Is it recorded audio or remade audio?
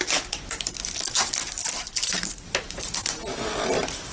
recorded